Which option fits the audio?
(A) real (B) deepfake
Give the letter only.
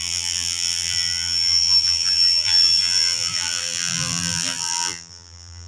B